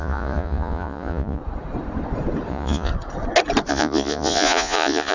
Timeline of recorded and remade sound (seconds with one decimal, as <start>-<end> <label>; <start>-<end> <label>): 0.0-1.4 remade; 1.4-2.5 recorded; 2.5-2.9 remade; 2.9-3.7 recorded; 3.7-5.1 remade